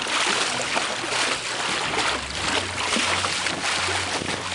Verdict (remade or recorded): recorded